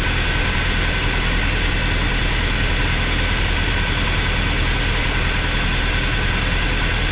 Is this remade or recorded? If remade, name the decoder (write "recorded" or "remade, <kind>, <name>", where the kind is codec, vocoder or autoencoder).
recorded